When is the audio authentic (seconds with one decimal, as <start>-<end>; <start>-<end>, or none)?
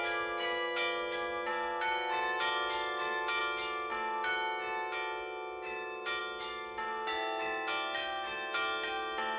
0.0-9.4